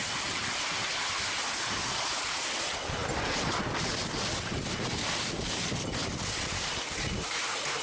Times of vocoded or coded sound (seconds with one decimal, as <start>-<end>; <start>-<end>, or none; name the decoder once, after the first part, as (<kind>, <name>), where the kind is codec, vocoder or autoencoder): 3.0-6.9 (vocoder, BigVGAN v2)